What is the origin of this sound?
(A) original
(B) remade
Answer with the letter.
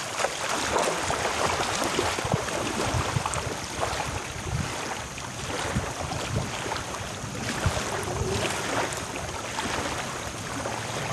A